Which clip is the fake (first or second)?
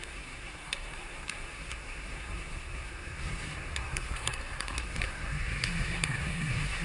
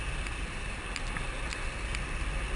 first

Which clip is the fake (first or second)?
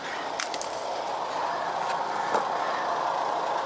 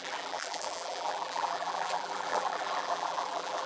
second